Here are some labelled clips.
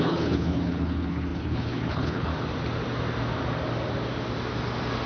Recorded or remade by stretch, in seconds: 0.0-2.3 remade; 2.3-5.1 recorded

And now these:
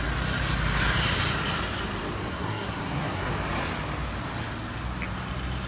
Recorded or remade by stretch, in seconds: 0.0-2.3 recorded; 2.3-3.3 remade; 3.3-5.7 recorded

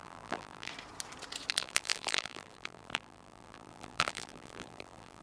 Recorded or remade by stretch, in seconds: 0.0-0.7 remade; 0.7-1.5 recorded; 1.5-5.2 remade